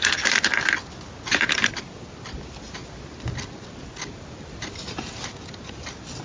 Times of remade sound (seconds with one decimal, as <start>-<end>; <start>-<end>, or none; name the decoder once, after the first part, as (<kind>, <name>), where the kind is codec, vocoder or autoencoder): none